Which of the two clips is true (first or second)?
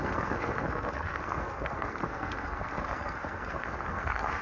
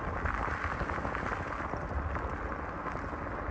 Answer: second